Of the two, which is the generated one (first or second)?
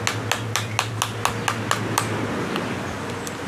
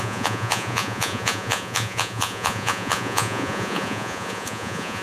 second